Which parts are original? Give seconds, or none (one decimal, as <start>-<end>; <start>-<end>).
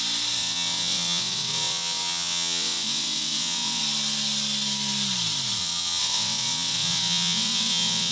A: 0.0-0.4; 3.8-5.6